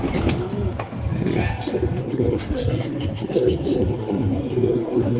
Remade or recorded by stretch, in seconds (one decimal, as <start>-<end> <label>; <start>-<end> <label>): 0.0-2.0 recorded; 2.0-5.2 remade

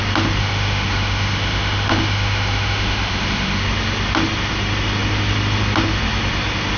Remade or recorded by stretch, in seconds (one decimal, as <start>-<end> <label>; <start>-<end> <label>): 0.0-0.4 recorded; 0.4-3.6 remade; 3.6-6.8 recorded